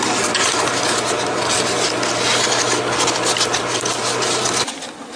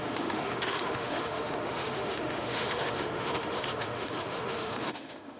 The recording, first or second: first